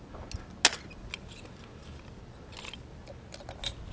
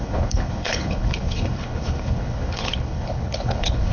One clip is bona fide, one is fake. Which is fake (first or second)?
second